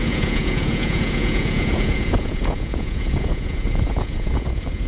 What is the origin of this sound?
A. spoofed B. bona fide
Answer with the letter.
A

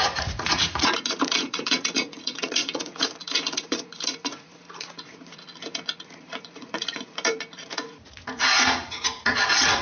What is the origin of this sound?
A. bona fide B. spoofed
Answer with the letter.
B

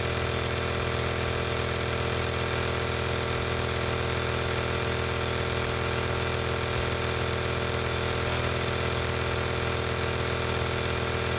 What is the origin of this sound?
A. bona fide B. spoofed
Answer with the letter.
A